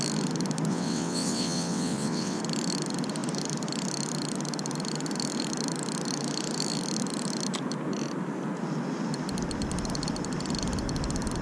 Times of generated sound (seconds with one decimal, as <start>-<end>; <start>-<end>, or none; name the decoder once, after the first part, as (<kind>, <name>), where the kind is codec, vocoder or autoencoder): 0.7-2.4 (vocoder, WaveNeXt)